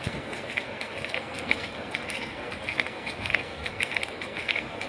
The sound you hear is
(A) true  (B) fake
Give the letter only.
B